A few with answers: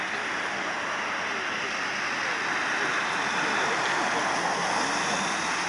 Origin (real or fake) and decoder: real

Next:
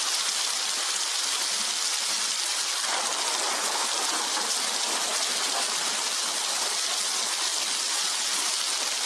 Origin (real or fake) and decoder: real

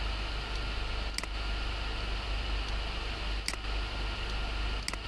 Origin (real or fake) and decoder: real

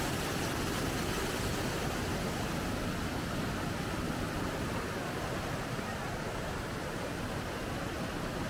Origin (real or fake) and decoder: real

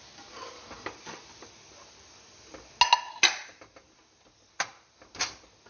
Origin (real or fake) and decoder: real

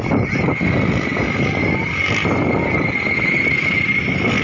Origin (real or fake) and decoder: real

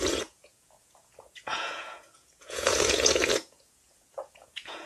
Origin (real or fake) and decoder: fake, vocoder, Vocos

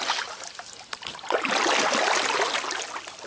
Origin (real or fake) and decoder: real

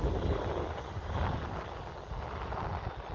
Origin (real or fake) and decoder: real